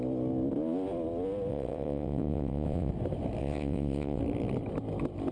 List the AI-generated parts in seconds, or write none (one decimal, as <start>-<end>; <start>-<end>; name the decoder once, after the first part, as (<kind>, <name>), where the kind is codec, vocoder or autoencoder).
1.5-2.9 (vocoder, WaveNeXt); 3.4-4.2